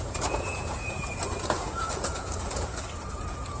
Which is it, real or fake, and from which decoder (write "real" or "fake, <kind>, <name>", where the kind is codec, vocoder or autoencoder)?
fake, vocoder, Vocos